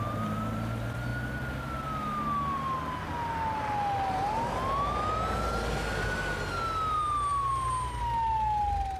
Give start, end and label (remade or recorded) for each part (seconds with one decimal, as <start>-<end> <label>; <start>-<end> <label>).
0.0-9.0 recorded